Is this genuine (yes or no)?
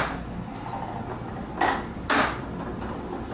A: yes